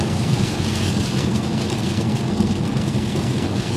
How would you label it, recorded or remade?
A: remade